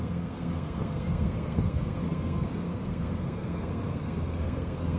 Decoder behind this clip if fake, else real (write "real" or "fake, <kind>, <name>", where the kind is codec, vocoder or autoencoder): fake, codec, SNAC